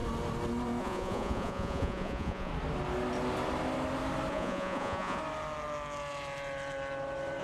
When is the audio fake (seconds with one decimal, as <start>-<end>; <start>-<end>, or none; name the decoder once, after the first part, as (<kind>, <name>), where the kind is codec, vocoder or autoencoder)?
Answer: 0.8-2.5 (vocoder, Vocos); 4.3-5.2